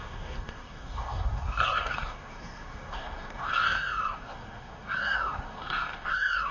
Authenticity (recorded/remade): remade